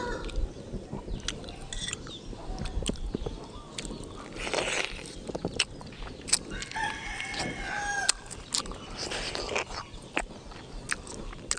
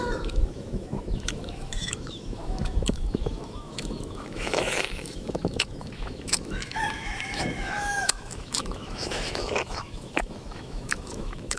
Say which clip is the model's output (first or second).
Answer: second